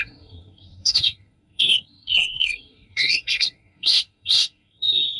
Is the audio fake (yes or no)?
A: yes